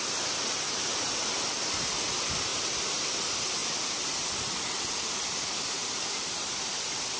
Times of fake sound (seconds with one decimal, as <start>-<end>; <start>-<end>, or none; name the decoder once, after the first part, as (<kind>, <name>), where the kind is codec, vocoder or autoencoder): 2.5-3.0 (vocoder, BigVGAN v2); 5.8-7.2